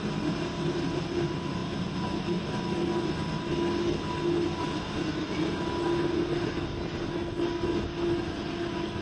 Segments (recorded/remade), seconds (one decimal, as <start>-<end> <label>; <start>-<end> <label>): 0.0-9.0 recorded